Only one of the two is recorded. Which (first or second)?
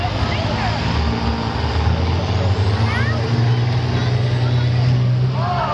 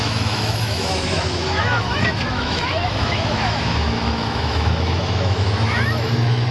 first